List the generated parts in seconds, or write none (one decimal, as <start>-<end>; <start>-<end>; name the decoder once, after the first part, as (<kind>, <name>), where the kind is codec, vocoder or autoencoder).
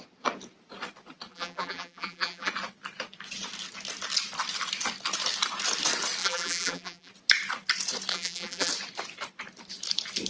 1.3-2.5 (vocoder, BigVGAN v2); 6.2-7.1; 8.1-8.7